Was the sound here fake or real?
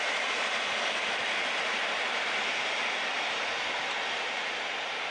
fake